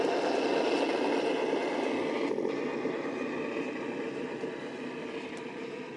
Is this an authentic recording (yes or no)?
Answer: yes